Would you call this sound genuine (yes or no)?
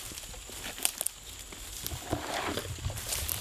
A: yes